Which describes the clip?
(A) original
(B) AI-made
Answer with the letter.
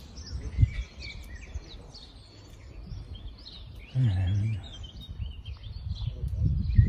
A